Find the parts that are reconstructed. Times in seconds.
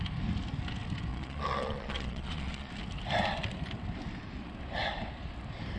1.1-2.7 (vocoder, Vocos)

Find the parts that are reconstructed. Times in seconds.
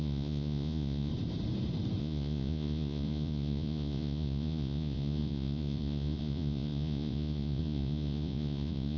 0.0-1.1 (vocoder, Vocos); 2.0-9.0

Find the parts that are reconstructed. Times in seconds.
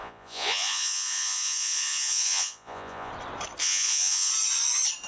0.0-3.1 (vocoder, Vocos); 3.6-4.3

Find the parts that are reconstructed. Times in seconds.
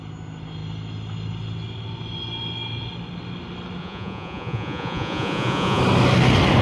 3.8-5.8 (vocoder, Vocos)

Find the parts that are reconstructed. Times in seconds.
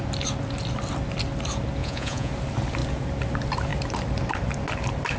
1.8-2.3 (vocoder, Vocos)